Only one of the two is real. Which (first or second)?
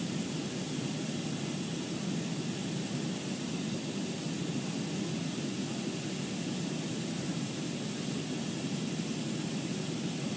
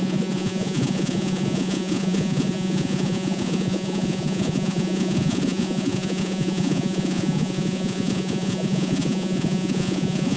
first